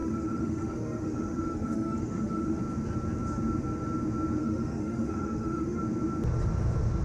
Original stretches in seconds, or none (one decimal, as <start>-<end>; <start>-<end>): 2.6-4.4; 5.8-7.0